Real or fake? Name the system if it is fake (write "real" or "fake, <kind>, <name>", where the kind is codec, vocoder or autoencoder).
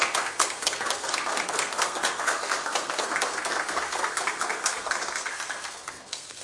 fake, codec, SNAC